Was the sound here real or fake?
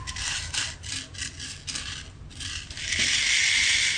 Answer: real